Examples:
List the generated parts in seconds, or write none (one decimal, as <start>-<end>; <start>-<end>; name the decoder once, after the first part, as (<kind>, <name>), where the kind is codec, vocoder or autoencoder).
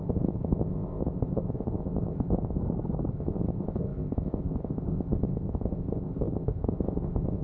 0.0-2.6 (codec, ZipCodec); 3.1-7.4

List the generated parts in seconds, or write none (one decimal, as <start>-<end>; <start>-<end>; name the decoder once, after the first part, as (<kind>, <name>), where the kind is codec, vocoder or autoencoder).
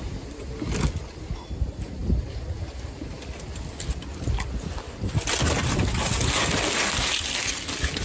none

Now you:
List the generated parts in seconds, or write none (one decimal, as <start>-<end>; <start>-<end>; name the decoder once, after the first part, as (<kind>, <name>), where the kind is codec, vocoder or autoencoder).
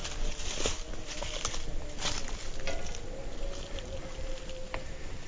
none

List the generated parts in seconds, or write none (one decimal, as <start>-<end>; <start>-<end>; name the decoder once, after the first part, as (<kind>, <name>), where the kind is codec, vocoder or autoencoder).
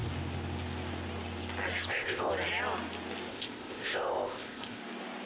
1.9-2.3 (codec, ZipCodec); 3.3-4.8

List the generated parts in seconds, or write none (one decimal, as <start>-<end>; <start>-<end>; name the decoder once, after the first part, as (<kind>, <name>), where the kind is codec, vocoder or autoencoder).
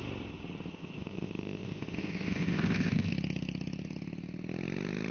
0.7-3.1 (codec, ZipCodec)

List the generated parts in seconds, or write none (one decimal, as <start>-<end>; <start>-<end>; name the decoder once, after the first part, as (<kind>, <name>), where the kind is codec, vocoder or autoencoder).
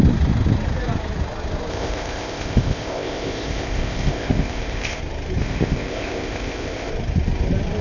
1.7-5.0 (codec, ZipCodec); 5.4-6.9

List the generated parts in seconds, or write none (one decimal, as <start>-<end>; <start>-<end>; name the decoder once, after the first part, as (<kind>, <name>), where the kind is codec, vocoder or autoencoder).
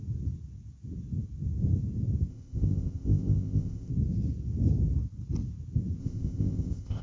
2.3-3.9 (codec, ZipCodec); 6.0-7.0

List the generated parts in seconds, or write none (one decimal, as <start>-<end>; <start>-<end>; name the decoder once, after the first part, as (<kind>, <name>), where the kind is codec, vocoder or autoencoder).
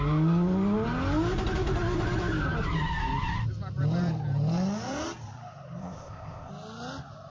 5.8-6.5 (codec, ZipCodec)